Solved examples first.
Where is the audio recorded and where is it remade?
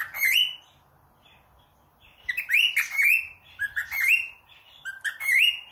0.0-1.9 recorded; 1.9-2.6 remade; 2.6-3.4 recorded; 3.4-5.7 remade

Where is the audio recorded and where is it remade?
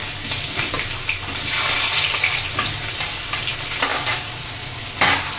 0.0-3.9 recorded; 3.9-4.8 remade; 4.8-5.4 recorded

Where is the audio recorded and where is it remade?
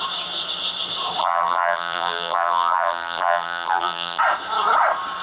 0.0-1.2 recorded; 1.2-4.2 remade; 4.2-5.2 recorded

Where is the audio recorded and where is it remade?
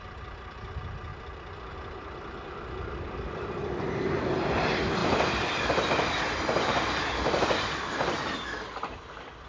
0.0-5.0 recorded; 5.0-7.4 remade; 7.4-9.5 recorded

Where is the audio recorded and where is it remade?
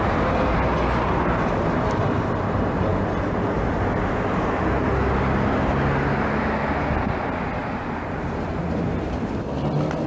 0.0-7.6 recorded; 7.6-8.5 remade; 8.5-10.1 recorded